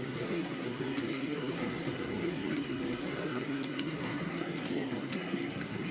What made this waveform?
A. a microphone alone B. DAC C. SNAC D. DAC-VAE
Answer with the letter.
C